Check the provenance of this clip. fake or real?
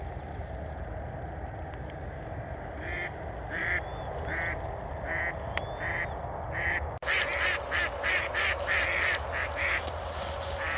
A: real